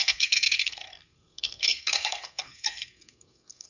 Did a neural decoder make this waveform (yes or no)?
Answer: yes